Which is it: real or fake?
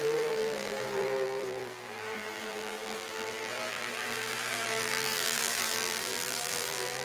fake